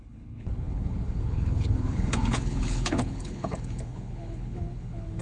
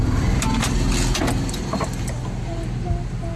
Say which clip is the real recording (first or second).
second